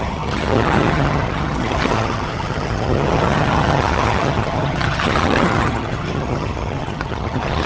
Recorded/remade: remade